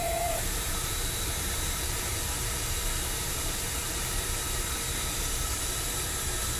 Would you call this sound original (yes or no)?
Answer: no